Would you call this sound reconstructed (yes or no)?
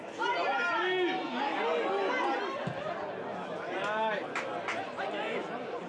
no